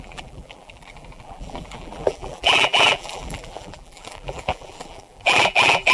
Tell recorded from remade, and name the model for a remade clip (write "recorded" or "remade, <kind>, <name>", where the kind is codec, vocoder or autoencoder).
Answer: remade, vocoder, BigVGAN v2